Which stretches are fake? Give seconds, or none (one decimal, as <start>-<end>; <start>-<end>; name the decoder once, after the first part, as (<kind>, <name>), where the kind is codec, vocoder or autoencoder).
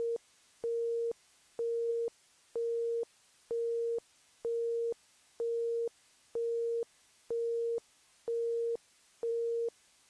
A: 0.0-1.9 (autoencoder, DAC-VAE); 4.2-8.1; 9.3-10.1